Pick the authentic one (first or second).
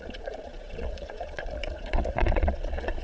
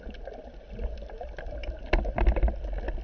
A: second